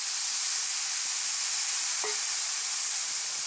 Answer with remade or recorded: recorded